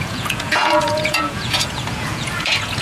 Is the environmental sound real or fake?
fake